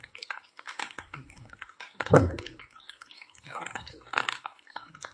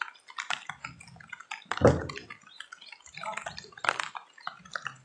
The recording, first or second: second